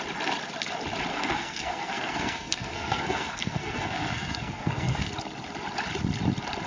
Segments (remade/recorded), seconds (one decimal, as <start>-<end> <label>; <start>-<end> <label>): 0.0-1.1 recorded; 1.1-5.1 remade; 5.1-6.7 recorded

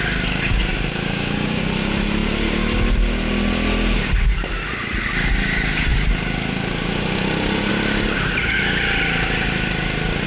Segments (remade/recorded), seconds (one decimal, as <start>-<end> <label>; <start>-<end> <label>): 0.0-0.7 recorded; 0.7-1.6 remade; 1.6-10.3 recorded

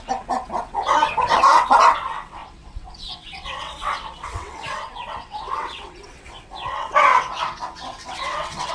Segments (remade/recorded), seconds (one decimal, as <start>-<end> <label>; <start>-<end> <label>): 0.0-8.7 remade

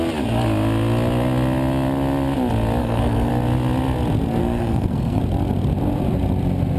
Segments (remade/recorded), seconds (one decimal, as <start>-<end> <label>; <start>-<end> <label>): 0.0-2.8 recorded; 2.8-3.3 remade; 3.3-4.4 recorded; 4.4-5.2 remade; 5.2-6.8 recorded

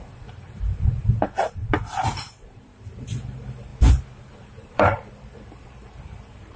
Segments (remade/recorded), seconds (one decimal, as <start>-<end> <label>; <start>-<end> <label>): 0.0-3.7 remade; 3.7-4.2 recorded; 4.2-6.6 remade

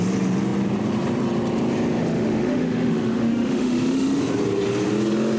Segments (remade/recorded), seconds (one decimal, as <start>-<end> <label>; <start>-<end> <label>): 0.0-2.0 recorded; 2.0-4.2 remade; 4.2-5.4 recorded